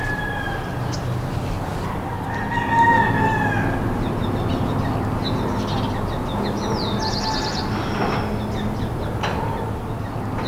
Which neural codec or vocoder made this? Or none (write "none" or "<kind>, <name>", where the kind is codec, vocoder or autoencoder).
none